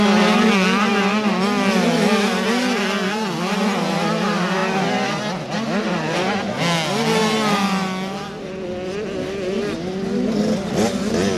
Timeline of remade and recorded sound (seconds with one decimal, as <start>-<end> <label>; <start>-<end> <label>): 0.0-11.4 recorded